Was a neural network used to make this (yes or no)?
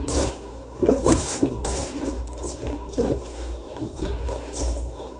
yes